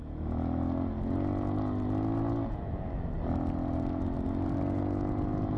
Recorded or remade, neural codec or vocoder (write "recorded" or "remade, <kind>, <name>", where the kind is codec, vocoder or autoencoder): recorded